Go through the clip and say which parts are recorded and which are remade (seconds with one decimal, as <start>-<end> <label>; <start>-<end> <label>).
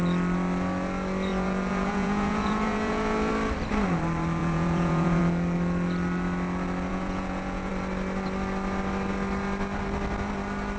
0.0-1.3 recorded; 1.3-3.3 remade; 3.3-4.4 recorded; 4.4-5.2 remade; 5.2-6.9 recorded; 6.9-7.7 remade; 7.7-10.8 recorded